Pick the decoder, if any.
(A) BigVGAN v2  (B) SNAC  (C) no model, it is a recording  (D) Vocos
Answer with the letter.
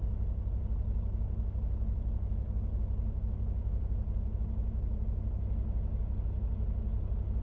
C